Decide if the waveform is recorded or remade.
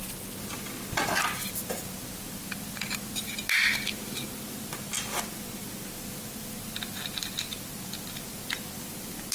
recorded